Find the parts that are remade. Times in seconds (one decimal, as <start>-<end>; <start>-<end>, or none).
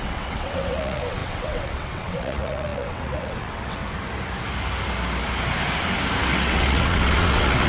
0.0-3.8; 6.2-7.7